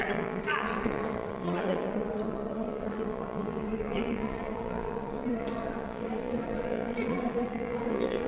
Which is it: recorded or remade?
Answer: remade